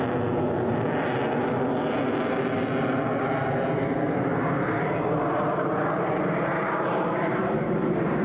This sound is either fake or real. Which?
real